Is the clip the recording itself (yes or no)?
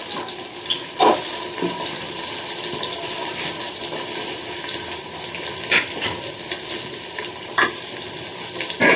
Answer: yes